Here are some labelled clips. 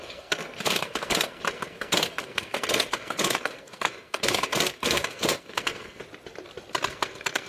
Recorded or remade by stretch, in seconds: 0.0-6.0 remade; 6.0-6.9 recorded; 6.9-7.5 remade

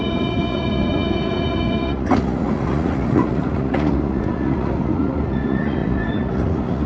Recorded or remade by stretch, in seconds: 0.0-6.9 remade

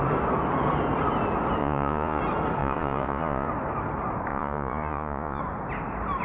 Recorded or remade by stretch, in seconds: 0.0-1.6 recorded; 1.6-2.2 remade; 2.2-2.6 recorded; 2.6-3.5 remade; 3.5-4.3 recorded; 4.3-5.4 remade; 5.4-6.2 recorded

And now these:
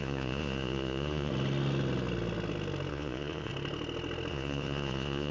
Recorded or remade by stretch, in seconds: 0.0-1.3 remade; 1.3-2.9 recorded; 2.9-3.5 remade; 3.5-4.3 recorded; 4.3-5.3 remade

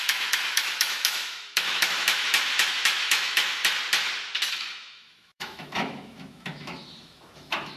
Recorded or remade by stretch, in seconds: 0.0-3.6 remade; 3.6-4.5 recorded; 4.5-7.8 remade